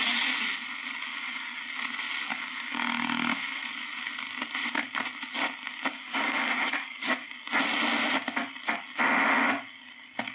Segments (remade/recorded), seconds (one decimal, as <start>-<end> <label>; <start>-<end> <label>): 0.0-1.1 recorded; 1.1-1.6 remade; 1.6-2.3 recorded; 2.3-3.6 remade; 3.6-5.9 recorded; 5.9-7.3 remade; 7.3-10.3 recorded